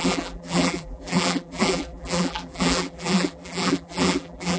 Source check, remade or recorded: remade